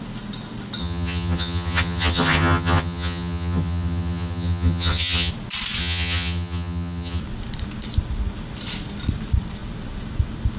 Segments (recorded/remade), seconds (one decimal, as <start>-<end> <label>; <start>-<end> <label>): 0.0-0.8 recorded; 0.8-5.3 remade; 5.3-5.8 recorded; 5.8-7.2 remade; 7.2-10.6 recorded